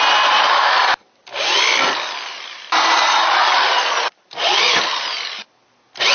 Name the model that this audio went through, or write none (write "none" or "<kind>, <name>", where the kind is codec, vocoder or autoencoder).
none